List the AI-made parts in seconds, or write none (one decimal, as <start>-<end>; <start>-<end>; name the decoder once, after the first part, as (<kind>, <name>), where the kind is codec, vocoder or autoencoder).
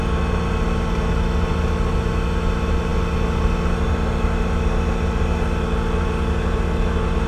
none